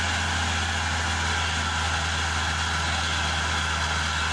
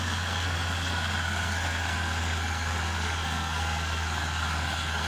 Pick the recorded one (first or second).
first